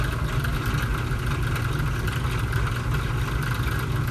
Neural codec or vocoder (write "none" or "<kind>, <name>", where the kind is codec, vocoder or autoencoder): none